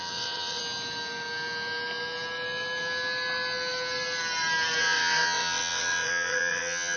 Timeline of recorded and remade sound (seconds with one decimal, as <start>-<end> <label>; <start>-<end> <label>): 0.0-0.6 remade; 0.6-4.8 recorded; 4.8-7.0 remade